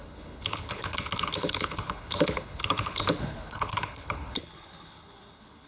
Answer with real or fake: fake